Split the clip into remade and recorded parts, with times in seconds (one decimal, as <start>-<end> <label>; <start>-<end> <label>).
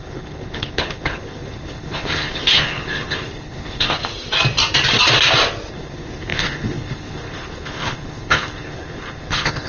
0.0-4.0 remade; 4.0-5.7 recorded; 5.7-9.7 remade